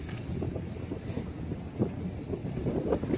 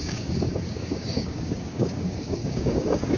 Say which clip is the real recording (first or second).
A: first